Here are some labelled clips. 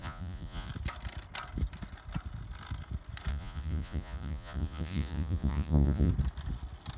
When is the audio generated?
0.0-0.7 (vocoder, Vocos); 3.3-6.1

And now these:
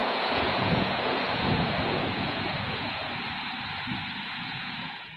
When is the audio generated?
0.0-3.1 (vocoder, Vocos); 4.2-5.2

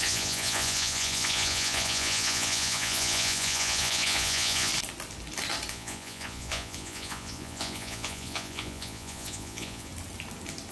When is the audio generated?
0.0-4.7 (vocoder, Vocos); 5.7-9.9

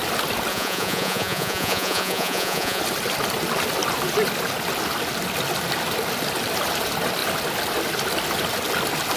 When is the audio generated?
0.5-2.8 (vocoder, Vocos)

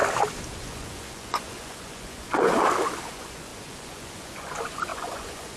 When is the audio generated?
0.6-2.5 (vocoder, Vocos); 3.1-5.6

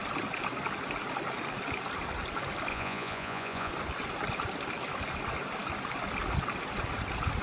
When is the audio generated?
2.7-3.7 (vocoder, Vocos)

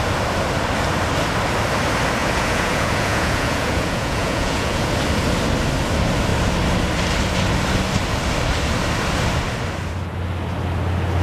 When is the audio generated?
2.2-4.9 (vocoder, Vocos)